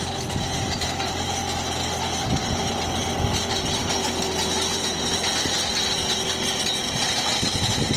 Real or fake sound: real